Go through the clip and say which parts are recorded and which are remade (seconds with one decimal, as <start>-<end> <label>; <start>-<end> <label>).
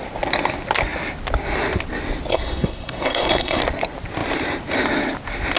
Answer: 0.0-2.3 recorded; 2.3-3.6 remade; 3.6-5.6 recorded